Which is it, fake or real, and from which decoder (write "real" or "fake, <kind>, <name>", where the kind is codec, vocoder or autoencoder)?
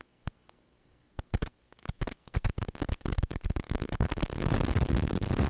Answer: fake, codec, SNAC